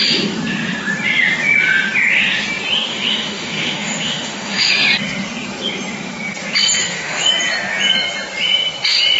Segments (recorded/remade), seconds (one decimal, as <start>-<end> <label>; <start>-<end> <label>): 0.0-2.9 recorded; 2.9-4.7 remade; 4.7-6.8 recorded; 6.8-7.3 remade; 7.3-9.2 recorded